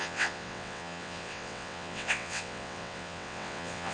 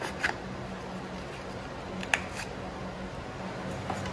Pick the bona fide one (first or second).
second